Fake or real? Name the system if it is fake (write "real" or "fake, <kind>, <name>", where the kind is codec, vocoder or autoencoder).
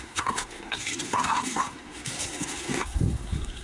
fake, codec, SNAC